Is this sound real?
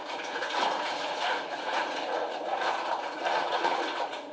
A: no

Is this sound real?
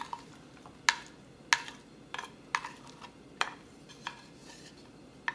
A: yes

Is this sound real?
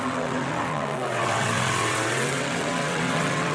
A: no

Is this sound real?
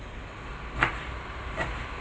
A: yes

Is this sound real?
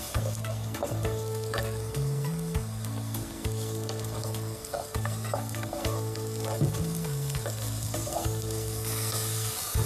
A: no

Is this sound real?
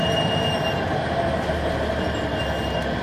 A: yes